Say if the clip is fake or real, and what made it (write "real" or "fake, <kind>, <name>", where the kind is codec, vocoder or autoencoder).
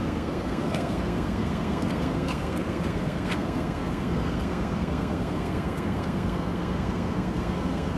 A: fake, codec, SNAC